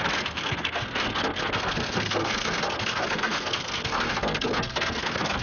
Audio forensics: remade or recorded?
remade